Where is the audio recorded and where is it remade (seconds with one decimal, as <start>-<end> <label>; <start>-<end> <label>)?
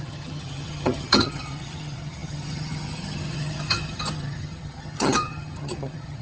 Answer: 0.0-6.2 remade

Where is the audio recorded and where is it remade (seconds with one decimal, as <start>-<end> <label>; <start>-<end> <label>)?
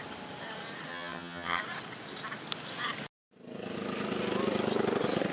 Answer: 0.0-0.9 recorded; 0.9-1.6 remade; 1.6-5.3 recorded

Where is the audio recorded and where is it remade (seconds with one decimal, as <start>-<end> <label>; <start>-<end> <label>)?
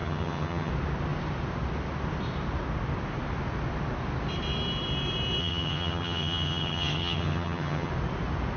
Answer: 0.0-0.7 remade; 0.7-5.4 recorded; 5.4-7.9 remade; 7.9-8.6 recorded